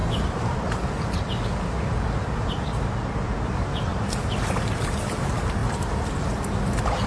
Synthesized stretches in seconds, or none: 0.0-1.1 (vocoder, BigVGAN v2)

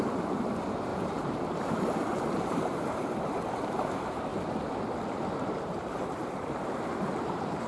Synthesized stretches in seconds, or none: 0.0-4.3 (vocoder, BigVGAN v2); 5.4-7.7

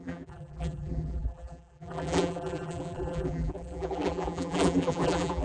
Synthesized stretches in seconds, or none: 0.0-5.4 (vocoder, BigVGAN v2)

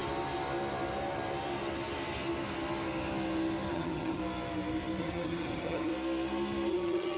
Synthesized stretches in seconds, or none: 3.7-4.2 (vocoder, HiFi-GAN); 5.0-5.9; 6.7-7.2

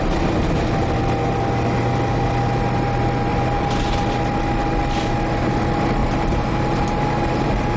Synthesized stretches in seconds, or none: 3.3-4.0 (vocoder, BigVGAN v2); 6.0-7.8

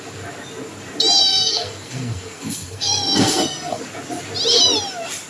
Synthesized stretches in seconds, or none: 1.3-3.8 (codec, SNAC)